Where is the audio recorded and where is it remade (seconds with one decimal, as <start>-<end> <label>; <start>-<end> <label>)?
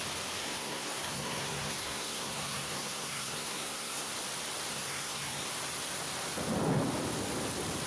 0.0-0.4 recorded; 0.4-4.1 remade; 4.1-4.7 recorded; 4.7-5.5 remade; 5.5-7.9 recorded